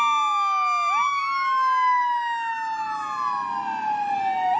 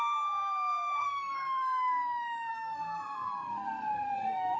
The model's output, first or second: second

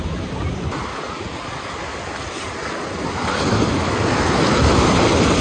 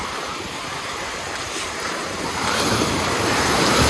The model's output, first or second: second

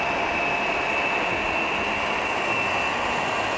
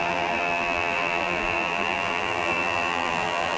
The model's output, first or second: second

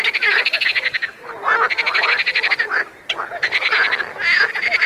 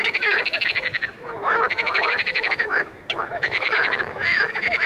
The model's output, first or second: second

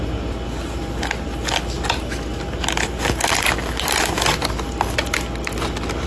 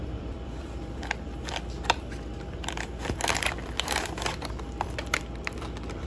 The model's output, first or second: second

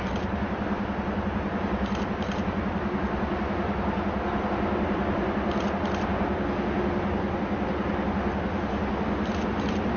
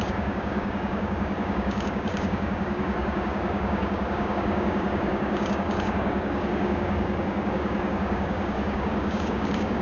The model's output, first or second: second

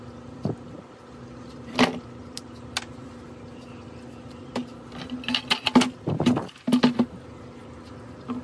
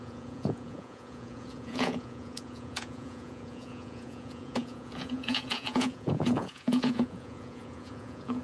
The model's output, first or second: second